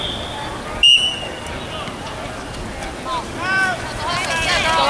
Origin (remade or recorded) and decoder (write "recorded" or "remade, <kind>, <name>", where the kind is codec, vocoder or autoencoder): recorded